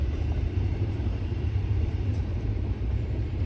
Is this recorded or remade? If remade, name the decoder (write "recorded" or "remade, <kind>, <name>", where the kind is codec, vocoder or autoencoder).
remade, vocoder, BigVGAN v2